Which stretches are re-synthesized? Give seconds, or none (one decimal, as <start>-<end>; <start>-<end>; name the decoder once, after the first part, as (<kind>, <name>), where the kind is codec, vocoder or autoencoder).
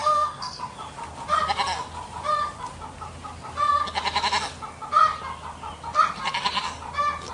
0.0-0.6 (codec, SNAC)